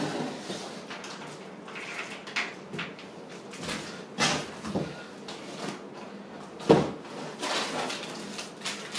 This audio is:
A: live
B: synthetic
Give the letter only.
A